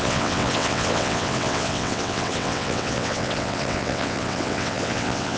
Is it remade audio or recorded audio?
remade